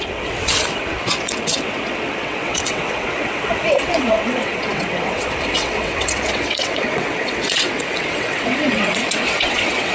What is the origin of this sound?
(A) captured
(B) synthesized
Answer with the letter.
B